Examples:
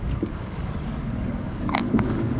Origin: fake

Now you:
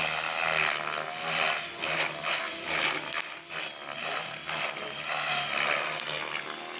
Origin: real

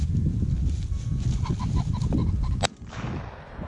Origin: real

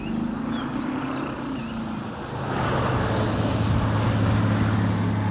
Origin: real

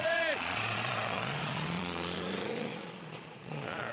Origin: fake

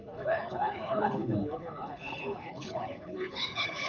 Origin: fake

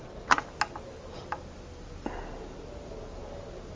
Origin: real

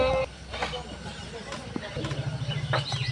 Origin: real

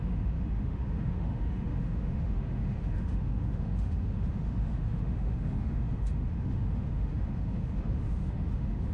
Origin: fake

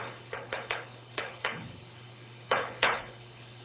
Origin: fake